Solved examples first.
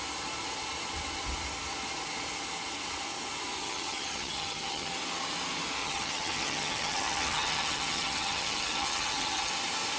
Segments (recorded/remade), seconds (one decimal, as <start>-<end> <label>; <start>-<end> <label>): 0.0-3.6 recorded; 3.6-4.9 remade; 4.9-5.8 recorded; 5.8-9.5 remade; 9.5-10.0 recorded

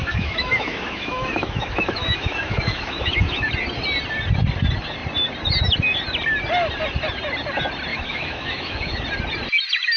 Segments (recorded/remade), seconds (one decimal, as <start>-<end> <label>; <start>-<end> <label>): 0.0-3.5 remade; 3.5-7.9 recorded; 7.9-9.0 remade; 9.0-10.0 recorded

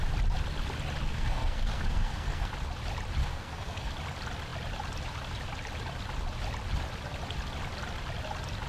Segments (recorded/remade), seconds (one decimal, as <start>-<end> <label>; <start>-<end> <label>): 0.0-1.1 recorded; 1.1-2.5 remade; 2.5-3.2 recorded; 3.2-3.9 remade; 3.9-8.7 recorded

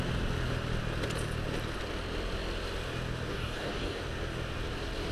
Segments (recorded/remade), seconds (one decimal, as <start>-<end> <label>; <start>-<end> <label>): 0.0-3.3 recorded; 3.3-4.0 remade; 4.0-5.1 recorded

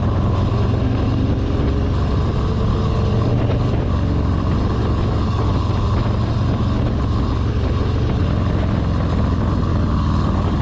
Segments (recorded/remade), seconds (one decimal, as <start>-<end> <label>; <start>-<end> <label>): 0.0-2.7 recorded; 2.7-3.3 remade; 3.3-4.8 recorded; 4.8-5.5 remade; 5.5-9.7 recorded; 9.7-10.6 remade

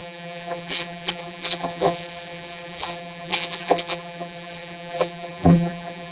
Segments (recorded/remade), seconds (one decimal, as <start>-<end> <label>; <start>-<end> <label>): 0.0-6.1 remade